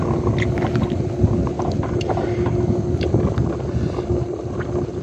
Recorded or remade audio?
recorded